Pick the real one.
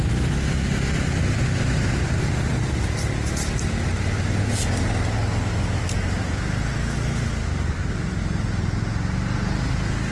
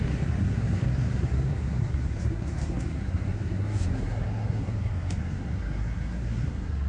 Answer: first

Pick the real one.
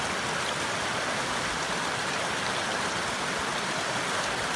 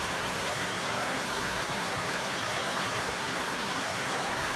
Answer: first